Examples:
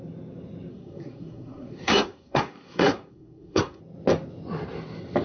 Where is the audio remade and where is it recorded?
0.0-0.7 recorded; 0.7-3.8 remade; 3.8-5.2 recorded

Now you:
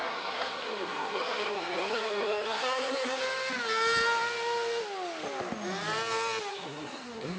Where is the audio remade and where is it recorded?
0.0-3.2 remade; 3.2-6.5 recorded; 6.5-7.4 remade

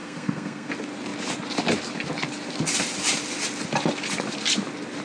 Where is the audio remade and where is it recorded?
0.0-0.7 remade; 0.7-5.0 recorded

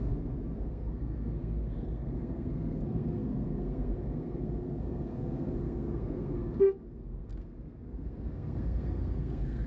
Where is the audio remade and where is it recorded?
0.0-9.7 remade

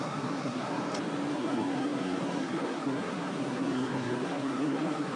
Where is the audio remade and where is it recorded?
0.0-0.8 remade; 0.8-1.3 recorded; 1.3-5.2 remade

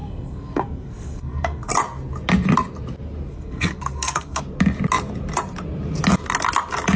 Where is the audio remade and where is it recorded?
0.0-1.7 remade; 1.7-3.3 recorded; 3.3-4.4 remade; 4.4-7.0 recorded

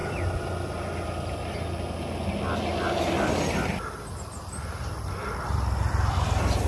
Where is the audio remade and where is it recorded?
0.0-6.7 recorded